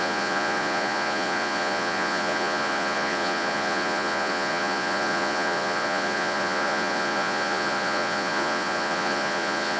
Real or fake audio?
fake